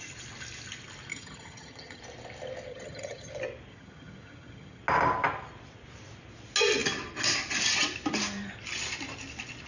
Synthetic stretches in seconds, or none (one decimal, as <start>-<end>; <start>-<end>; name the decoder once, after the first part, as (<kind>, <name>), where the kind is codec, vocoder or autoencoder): 1.1-2.0 (vocoder, HiFi-GAN); 2.7-3.3; 3.7-4.8